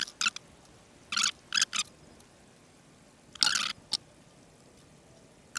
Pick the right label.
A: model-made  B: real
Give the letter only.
B